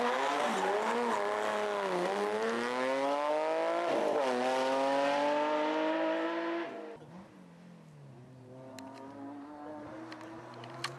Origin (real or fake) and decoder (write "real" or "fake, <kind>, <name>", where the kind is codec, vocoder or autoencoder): real